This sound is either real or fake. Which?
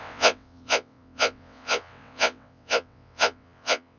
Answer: fake